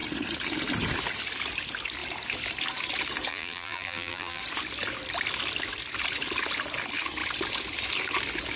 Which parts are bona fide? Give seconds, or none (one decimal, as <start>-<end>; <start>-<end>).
0.0-3.3; 4.4-8.6